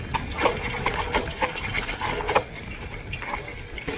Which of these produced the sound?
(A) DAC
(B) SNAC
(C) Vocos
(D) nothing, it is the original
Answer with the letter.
D